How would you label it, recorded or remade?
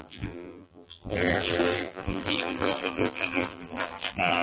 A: remade